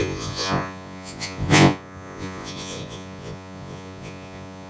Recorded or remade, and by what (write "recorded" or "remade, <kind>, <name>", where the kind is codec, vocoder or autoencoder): remade, vocoder, Vocos